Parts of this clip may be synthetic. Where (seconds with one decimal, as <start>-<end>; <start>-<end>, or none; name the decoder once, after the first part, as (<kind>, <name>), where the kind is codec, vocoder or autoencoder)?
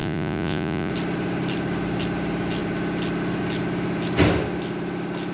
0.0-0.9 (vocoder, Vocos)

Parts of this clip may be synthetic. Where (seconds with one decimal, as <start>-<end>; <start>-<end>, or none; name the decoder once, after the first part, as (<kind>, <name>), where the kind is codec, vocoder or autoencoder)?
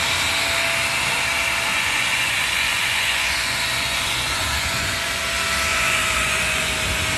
1.7-5.2 (vocoder, Vocos); 5.7-6.7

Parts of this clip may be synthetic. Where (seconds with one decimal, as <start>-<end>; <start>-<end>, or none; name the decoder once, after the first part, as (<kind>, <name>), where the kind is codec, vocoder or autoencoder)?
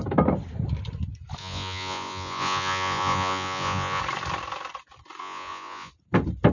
1.4-4.0 (vocoder, Vocos); 5.2-5.9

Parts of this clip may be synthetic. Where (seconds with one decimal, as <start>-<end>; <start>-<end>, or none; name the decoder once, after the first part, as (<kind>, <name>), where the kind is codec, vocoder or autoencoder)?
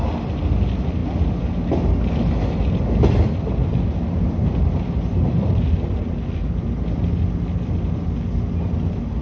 none